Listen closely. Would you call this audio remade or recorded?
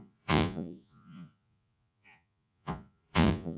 remade